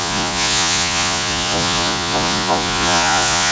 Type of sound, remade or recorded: remade